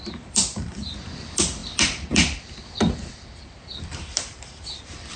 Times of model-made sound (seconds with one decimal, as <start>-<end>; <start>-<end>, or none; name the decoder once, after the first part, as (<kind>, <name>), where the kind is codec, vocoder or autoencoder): 0.0-5.2 (vocoder, BigVGAN v2)